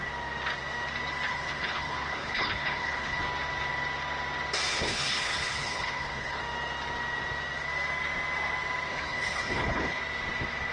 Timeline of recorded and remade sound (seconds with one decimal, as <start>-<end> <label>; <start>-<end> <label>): 0.0-1.3 recorded; 1.3-3.2 remade; 3.2-4.7 recorded; 4.7-6.4 remade; 6.4-8.9 recorded; 8.9-10.0 remade; 10.0-10.7 recorded